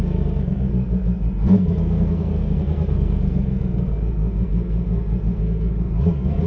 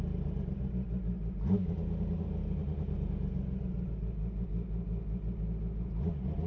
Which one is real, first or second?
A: second